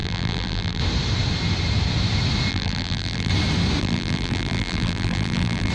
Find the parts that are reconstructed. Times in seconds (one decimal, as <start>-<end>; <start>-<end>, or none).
0.0-0.8; 2.5-3.3; 3.8-5.7